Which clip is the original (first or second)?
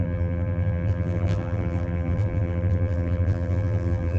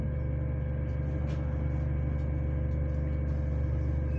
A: second